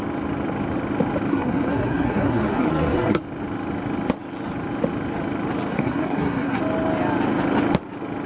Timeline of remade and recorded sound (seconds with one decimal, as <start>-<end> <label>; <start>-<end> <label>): 0.0-1.3 recorded; 1.3-3.2 remade; 3.2-5.7 recorded; 5.7-6.6 remade; 6.6-8.3 recorded